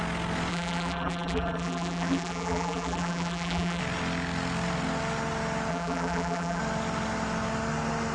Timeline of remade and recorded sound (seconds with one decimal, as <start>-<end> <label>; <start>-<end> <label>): 0.0-0.5 recorded; 0.5-3.8 remade; 3.8-5.7 recorded; 5.7-6.6 remade; 6.6-8.1 recorded